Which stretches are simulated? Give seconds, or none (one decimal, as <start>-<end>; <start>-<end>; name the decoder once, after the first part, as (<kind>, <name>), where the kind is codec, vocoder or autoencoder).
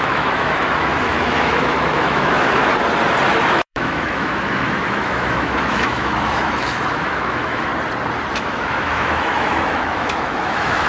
0.0-2.7 (autoencoder, DAC-VAE); 3.5-7.7; 8.3-10.9